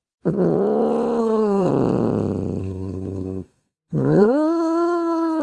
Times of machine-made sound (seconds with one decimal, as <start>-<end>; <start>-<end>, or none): 1.2-1.7; 2.6-5.4